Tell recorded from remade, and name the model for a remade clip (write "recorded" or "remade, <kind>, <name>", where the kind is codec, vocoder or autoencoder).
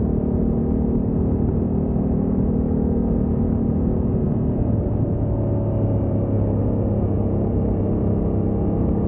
recorded